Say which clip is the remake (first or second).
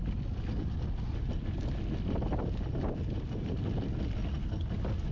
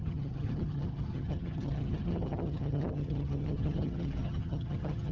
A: second